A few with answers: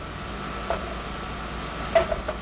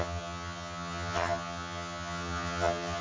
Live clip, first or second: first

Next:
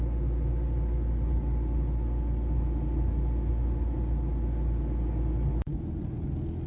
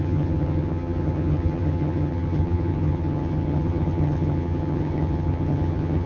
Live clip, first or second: first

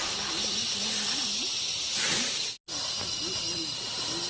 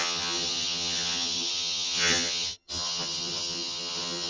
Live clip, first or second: first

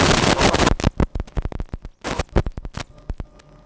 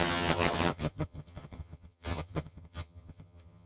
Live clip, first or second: first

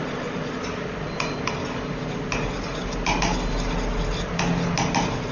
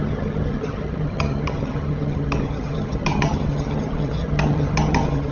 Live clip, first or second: first